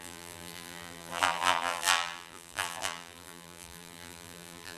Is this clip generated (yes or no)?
yes